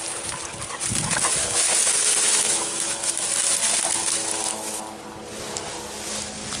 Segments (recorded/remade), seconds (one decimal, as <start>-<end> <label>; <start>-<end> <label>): 0.0-1.4 recorded; 1.4-3.3 remade; 3.3-4.2 recorded; 4.2-4.8 remade; 4.8-6.6 recorded